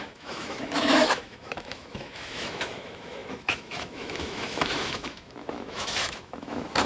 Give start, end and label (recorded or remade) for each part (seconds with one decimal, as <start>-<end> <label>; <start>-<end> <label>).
0.0-6.9 remade

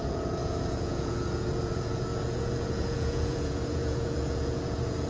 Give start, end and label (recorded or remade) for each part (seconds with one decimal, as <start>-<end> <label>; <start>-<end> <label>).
0.0-5.1 remade